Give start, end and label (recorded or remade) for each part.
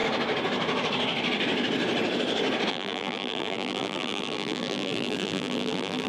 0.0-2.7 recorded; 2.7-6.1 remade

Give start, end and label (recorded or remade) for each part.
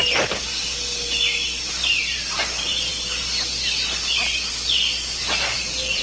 0.0-6.0 recorded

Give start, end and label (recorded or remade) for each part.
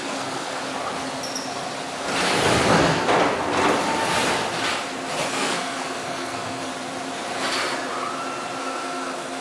0.0-0.6 remade; 0.6-5.3 recorded; 5.3-6.7 remade; 6.7-8.6 recorded; 8.6-9.4 remade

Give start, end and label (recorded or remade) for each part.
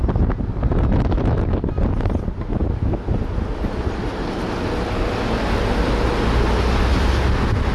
0.0-7.7 recorded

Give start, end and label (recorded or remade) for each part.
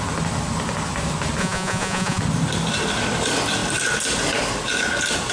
0.0-1.4 recorded; 1.4-2.2 remade; 2.2-5.3 recorded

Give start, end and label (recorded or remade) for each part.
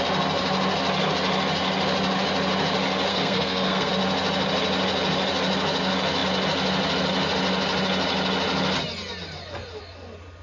0.0-3.1 recorded; 3.1-3.9 remade; 3.9-10.4 recorded